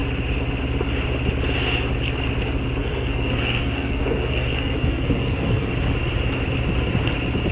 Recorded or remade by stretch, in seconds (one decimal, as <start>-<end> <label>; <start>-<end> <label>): 0.0-2.8 recorded; 2.8-5.7 remade; 5.7-7.5 recorded